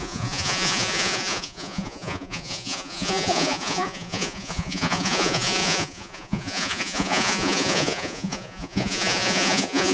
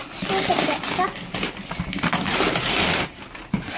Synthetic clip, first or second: first